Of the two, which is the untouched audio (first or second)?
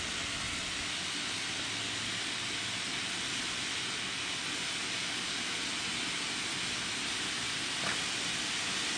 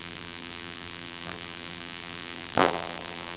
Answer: first